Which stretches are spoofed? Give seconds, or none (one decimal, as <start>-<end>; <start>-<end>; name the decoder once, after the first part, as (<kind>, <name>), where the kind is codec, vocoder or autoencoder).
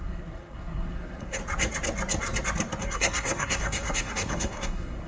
0.0-1.4 (codec, SNAC); 2.8-5.1